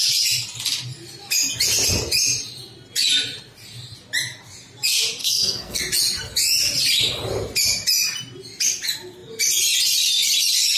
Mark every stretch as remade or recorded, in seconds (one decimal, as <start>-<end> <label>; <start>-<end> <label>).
0.0-5.2 recorded; 5.2-5.8 remade; 5.8-10.8 recorded